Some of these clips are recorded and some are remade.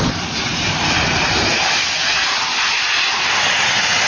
recorded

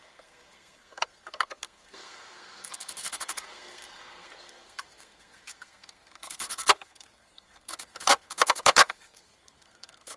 remade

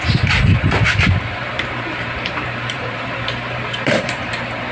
remade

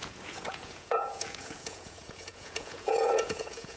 remade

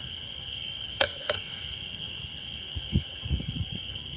remade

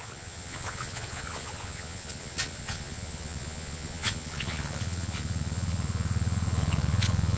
remade